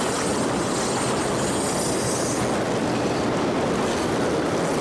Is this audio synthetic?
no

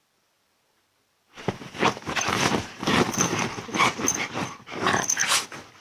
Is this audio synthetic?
no